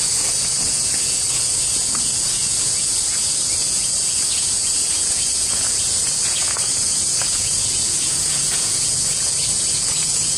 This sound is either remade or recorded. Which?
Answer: remade